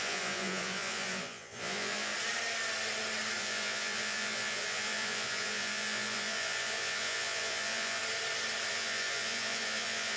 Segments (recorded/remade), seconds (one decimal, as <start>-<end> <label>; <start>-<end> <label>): 0.0-2.1 remade; 2.1-3.4 recorded; 3.4-8.0 remade; 8.0-8.7 recorded; 8.7-10.2 remade